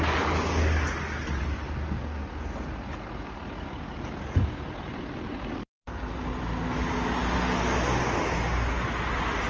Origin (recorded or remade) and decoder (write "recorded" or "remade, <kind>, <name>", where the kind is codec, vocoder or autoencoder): recorded